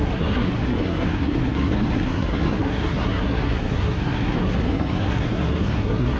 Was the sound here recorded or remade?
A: remade